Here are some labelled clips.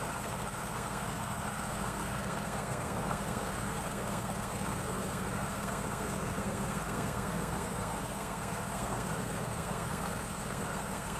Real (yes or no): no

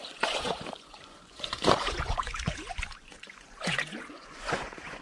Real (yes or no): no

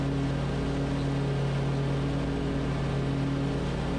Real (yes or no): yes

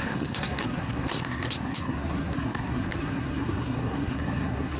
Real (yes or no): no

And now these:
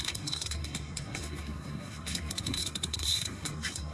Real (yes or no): no